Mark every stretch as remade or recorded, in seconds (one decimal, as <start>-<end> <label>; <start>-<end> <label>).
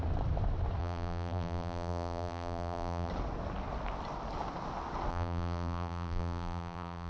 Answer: 0.0-0.8 recorded; 0.8-3.1 remade; 3.1-5.1 recorded; 5.1-7.1 remade